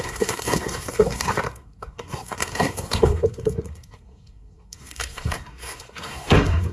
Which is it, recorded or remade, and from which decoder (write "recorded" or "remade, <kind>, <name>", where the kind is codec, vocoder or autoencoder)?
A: remade, codec, SNAC